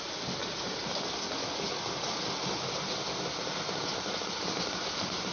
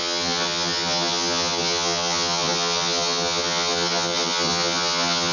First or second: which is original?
first